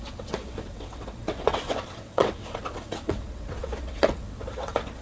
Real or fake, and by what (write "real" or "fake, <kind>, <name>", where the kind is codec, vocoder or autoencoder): fake, vocoder, WaveNeXt